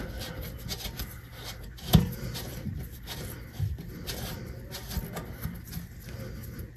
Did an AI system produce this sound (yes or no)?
no